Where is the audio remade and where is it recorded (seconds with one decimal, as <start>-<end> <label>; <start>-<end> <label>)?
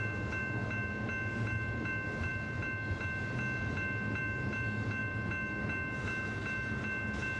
0.0-7.4 recorded